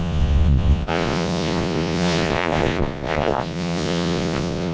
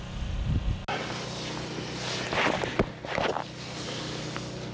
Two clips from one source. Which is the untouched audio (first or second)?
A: second